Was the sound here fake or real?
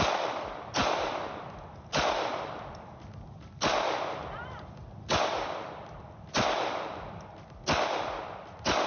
real